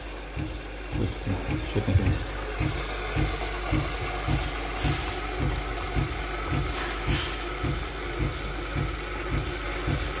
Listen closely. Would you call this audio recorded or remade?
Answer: recorded